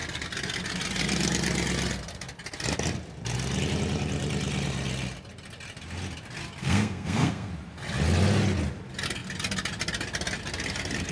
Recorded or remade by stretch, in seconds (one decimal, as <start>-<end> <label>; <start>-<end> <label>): 0.0-6.6 recorded; 6.6-7.5 remade; 7.5-11.1 recorded

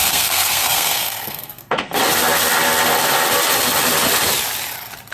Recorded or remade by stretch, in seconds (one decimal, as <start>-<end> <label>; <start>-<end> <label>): 0.0-2.0 remade; 2.0-5.1 recorded

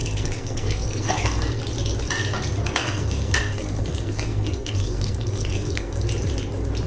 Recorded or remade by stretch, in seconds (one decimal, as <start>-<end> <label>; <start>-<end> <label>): 0.0-1.6 remade; 1.6-2.6 recorded; 2.6-6.0 remade; 6.0-6.9 recorded

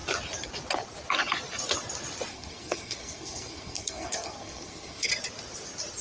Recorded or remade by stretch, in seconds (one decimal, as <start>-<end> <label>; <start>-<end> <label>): 0.0-2.3 recorded; 2.3-5.1 remade; 5.1-6.0 recorded